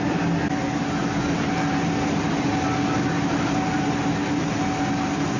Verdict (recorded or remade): recorded